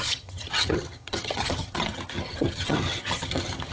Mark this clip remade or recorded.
remade